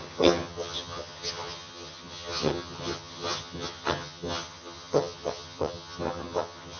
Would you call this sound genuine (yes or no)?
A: no